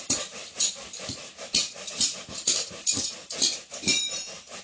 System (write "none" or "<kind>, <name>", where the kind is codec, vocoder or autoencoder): none